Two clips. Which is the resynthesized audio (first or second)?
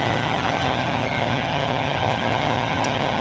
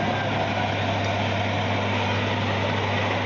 first